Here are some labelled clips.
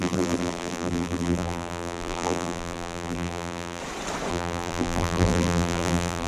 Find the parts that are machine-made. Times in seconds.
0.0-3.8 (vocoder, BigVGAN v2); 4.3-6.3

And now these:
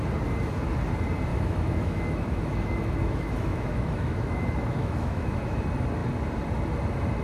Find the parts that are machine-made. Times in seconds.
1.3-5.6 (autoencoder, DAC-VAE)